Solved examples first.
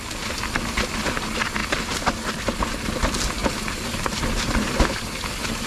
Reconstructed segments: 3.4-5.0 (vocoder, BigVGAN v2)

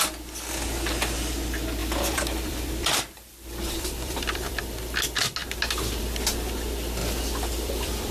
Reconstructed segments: 1.8-4.6 (vocoder, BigVGAN v2); 7.0-8.1

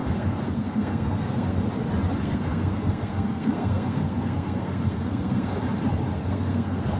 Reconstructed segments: 0.0-1.7 (codec, SNAC); 2.2-5.6; 6.1-7.0

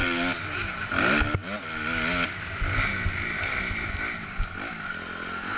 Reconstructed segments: none

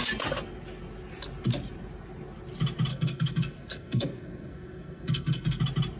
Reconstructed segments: 2.9-5.6 (codec, SNAC)

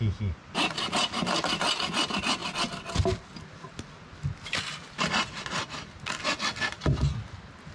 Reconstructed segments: 0.4-1.2 (vocoder, BigVGAN v2)

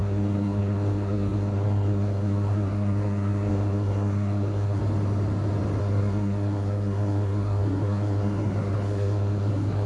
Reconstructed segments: 0.0-4.8 (codec, SNAC); 5.8-9.9